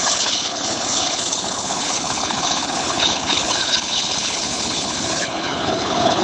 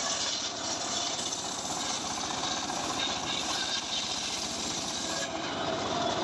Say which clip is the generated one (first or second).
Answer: first